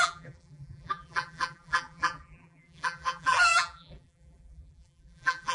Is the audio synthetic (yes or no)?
yes